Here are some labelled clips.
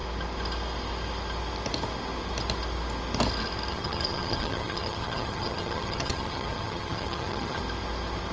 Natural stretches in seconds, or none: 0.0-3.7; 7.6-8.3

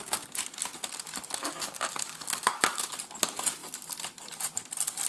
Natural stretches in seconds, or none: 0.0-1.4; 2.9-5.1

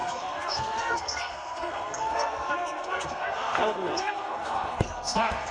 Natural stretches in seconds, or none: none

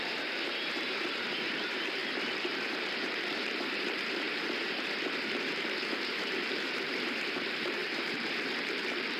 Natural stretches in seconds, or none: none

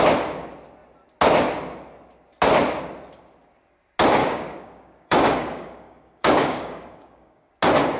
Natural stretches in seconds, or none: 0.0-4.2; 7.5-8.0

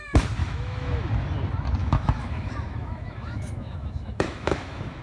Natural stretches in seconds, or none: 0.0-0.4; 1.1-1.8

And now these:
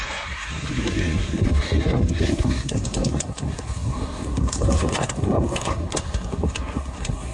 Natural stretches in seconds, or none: none

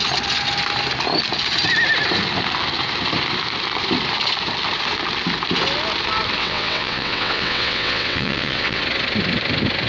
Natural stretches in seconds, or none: 0.0-6.4; 8.8-9.9